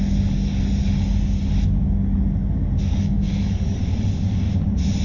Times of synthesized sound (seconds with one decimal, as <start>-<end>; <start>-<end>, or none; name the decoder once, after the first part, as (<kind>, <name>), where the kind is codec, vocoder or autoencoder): 2.9-3.8 (codec, DAC)